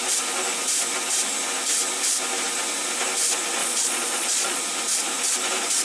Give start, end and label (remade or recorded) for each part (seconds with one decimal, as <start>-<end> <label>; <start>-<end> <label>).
0.0-3.6 recorded; 3.6-4.6 remade; 4.6-5.8 recorded